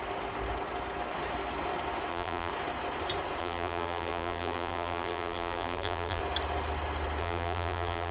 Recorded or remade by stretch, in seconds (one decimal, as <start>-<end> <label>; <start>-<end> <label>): 0.0-2.1 recorded; 2.1-2.5 remade; 2.5-3.4 recorded; 3.4-6.2 remade; 6.2-7.2 recorded; 7.2-8.1 remade